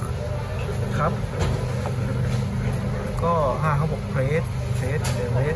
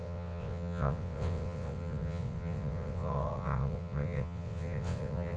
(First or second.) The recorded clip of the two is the first